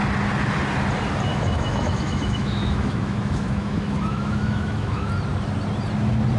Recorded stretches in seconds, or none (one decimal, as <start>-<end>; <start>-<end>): 0.0-1.3; 5.1-6.4

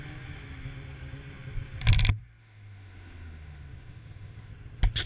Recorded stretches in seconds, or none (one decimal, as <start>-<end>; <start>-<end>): 0.0-2.4; 4.5-5.1

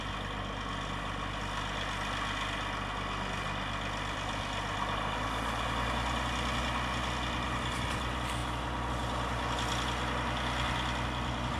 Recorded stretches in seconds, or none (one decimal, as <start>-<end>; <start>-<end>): 0.0-11.6

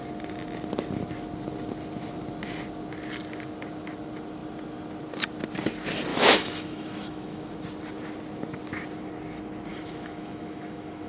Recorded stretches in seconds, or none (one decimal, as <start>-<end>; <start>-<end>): 0.0-6.1; 7.5-9.7

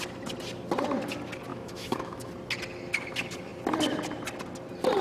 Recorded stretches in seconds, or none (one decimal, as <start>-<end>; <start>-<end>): 0.0-1.5; 2.3-5.0

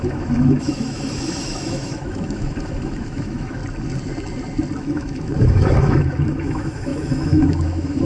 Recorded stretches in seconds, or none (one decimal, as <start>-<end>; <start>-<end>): 3.6-4.8

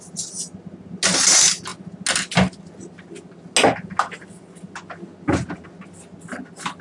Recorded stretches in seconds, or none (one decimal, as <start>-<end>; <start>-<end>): 0.0-6.8

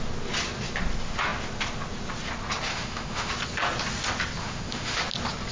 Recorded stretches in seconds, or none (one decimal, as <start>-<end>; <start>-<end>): 0.0-2.7; 3.3-4.4; 5.0-5.5